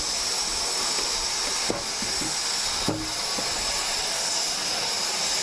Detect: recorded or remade recorded